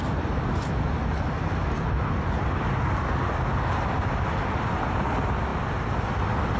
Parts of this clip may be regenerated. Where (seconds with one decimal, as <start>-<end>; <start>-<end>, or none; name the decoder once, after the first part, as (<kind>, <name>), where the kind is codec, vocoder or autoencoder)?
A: none